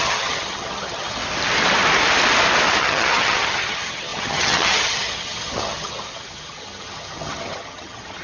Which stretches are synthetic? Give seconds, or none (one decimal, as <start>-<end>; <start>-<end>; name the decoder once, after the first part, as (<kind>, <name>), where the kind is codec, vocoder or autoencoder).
0.0-1.2 (vocoder, HiFi-GAN); 2.8-8.2